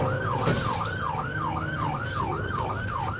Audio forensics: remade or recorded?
recorded